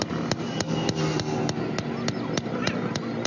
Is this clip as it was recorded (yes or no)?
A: yes